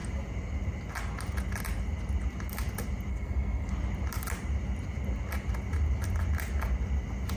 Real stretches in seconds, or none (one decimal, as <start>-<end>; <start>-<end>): 0.0-3.1; 3.7-7.4